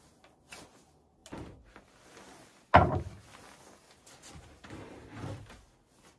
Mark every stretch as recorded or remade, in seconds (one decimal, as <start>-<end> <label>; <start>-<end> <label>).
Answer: 0.0-6.2 recorded